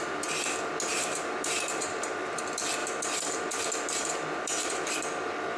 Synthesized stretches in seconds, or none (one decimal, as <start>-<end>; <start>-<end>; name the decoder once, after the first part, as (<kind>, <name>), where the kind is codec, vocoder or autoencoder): 0.9-2.4 (vocoder, BigVGAN v2); 2.8-5.0